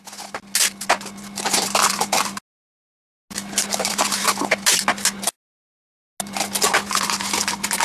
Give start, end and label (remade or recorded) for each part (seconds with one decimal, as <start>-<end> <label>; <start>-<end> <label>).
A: 0.0-7.8 recorded